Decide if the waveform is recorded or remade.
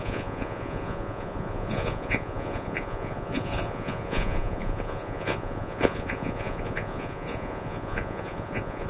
remade